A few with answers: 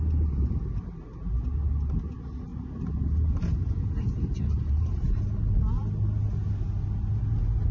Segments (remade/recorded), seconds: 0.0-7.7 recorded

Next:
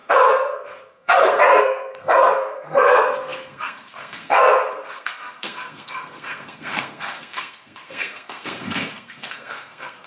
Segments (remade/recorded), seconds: 0.0-10.1 remade